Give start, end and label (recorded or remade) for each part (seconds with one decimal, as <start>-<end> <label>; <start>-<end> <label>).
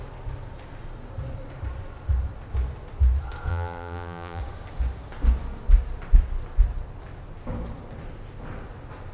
0.0-3.5 recorded; 3.5-4.4 remade; 4.4-9.1 recorded